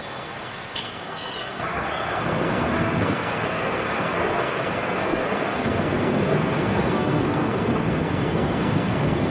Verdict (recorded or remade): remade